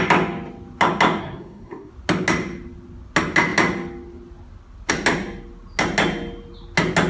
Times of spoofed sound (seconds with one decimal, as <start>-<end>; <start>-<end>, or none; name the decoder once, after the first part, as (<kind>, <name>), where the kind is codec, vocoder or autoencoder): 1.2-1.9 (codec, SNAC)